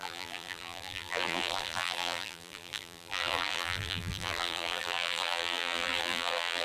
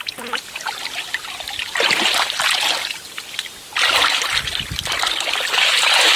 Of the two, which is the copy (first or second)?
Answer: first